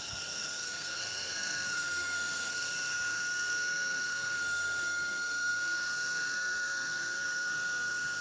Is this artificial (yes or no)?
yes